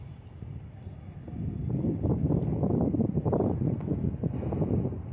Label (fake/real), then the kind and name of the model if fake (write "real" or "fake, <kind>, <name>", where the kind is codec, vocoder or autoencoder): real